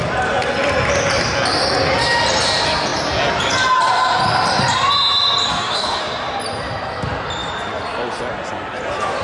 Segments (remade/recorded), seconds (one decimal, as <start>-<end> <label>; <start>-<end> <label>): 0.0-5.5 recorded; 5.5-6.0 remade; 6.0-9.2 recorded